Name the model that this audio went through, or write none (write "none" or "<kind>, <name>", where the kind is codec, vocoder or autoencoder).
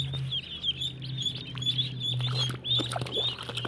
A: none